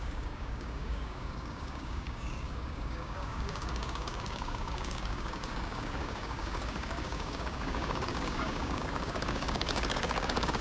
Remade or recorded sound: remade